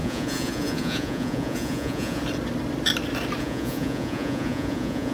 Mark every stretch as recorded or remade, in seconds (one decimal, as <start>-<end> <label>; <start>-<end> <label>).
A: 0.0-2.2 remade; 2.2-3.4 recorded; 3.4-5.1 remade